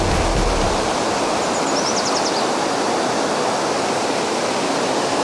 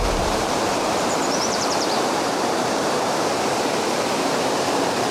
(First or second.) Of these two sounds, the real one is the first